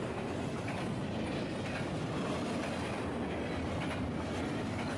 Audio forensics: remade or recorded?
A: recorded